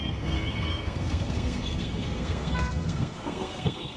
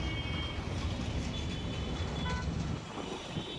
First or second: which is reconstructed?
first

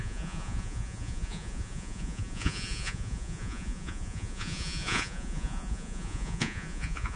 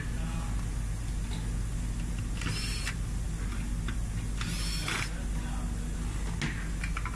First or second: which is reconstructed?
first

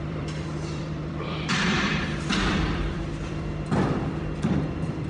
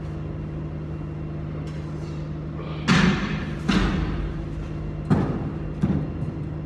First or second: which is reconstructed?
first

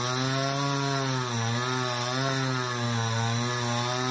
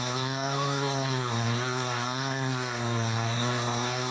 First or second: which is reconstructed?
second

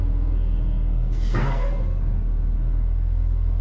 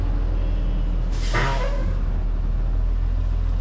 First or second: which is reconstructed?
first